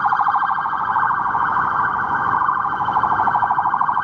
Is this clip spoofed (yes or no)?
yes